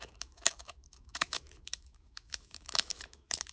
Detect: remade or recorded remade